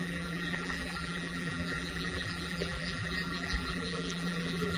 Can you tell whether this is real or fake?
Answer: fake